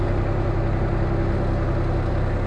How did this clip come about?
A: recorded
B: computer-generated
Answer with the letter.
A